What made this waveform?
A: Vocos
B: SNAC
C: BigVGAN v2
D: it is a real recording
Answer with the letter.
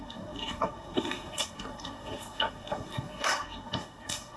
B